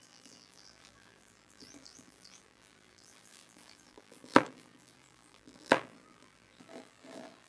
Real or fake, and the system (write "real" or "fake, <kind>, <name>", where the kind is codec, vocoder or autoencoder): fake, vocoder, BigVGAN v2